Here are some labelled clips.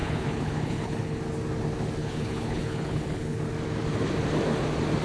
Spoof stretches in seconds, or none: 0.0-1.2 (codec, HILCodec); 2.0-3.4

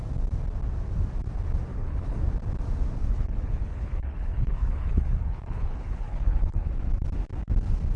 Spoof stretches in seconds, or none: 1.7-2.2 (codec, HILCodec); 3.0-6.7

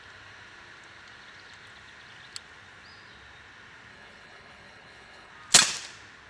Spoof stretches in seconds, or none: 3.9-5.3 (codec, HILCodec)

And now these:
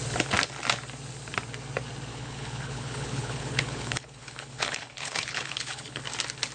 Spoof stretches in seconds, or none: 2.1-6.0 (codec, HILCodec)